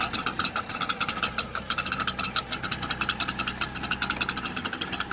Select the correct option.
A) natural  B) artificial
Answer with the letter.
A